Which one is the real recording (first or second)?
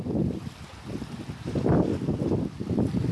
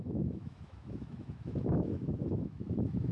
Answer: first